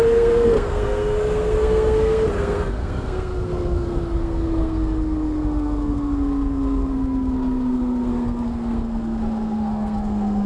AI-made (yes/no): yes